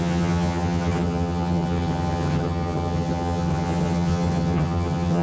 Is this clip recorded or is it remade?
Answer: remade